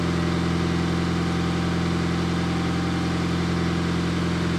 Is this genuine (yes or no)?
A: yes